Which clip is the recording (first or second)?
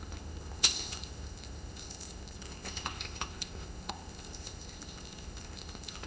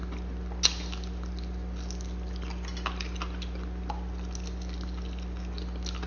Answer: second